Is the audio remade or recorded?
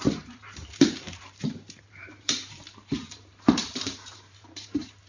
remade